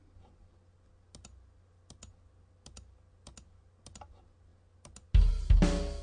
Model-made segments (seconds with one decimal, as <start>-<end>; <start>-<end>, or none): none